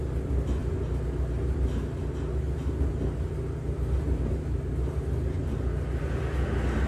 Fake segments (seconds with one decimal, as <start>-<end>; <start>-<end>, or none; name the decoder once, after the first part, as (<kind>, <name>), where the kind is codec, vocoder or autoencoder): none